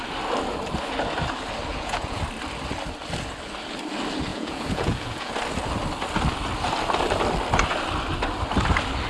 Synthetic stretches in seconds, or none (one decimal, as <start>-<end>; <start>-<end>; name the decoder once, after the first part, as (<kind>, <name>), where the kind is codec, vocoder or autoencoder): 1.7-2.2 (vocoder, Vocos); 4.3-5.3